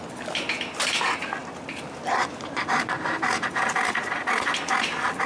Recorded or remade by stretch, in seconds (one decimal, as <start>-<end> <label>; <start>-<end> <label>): 0.0-5.3 recorded